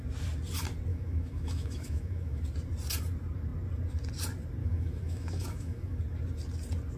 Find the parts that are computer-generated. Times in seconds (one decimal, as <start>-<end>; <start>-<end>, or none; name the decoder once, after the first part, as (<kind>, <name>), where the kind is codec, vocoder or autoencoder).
0.9-2.4 (autoencoder, DAC-VAE); 4.6-6.0